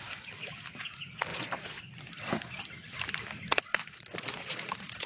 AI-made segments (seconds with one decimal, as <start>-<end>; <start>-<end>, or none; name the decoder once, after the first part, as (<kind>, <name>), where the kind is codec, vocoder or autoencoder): 1.3-1.8 (vocoder, Vocos); 3.7-5.1